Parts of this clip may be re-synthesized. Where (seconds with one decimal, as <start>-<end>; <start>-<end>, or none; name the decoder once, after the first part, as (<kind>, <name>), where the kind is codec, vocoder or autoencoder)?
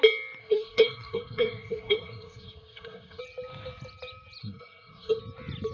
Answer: 0.4-3.2 (codec, SNAC); 4.4-5.2